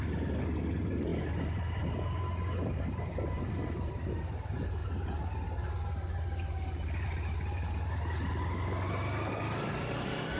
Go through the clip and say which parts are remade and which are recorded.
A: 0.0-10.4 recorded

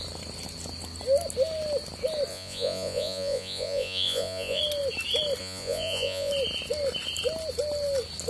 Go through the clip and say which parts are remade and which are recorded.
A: 0.0-2.3 recorded; 2.3-4.6 remade; 4.6-5.4 recorded; 5.4-6.3 remade; 6.3-8.3 recorded

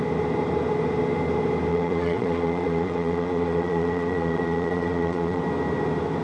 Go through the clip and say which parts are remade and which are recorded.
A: 0.0-1.7 recorded; 1.7-5.4 remade; 5.4-6.2 recorded

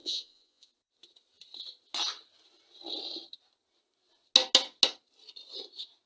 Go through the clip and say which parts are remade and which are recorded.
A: 0.0-0.7 remade; 0.7-6.1 recorded

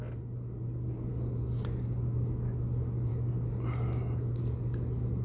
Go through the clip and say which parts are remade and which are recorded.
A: 0.0-5.2 recorded

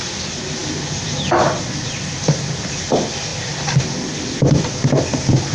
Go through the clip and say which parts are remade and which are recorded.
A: 0.0-5.5 recorded

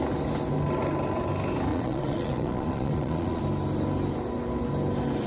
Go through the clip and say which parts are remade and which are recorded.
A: 0.0-1.7 recorded; 1.7-3.4 remade; 3.4-5.3 recorded